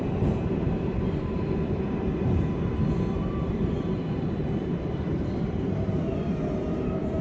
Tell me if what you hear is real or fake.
fake